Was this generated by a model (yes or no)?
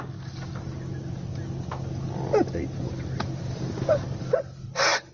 no